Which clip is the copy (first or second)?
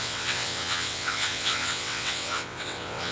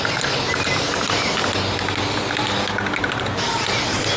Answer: first